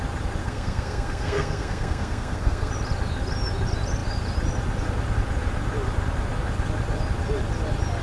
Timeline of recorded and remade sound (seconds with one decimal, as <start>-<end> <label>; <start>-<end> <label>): 0.0-0.4 recorded; 0.4-2.7 remade; 2.7-8.0 recorded